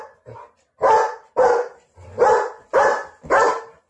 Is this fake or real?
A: real